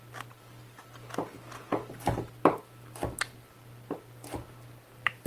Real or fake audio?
real